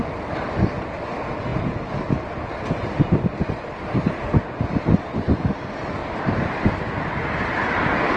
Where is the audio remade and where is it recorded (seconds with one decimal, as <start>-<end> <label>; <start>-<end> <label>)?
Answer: 0.0-6.0 recorded; 6.0-7.5 remade; 7.5-8.2 recorded